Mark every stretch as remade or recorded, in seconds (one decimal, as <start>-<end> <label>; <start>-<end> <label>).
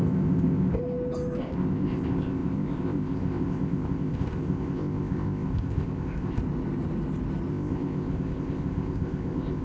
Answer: 0.0-0.8 remade; 0.8-1.4 recorded; 1.4-6.4 remade; 6.4-7.5 recorded; 7.5-9.6 remade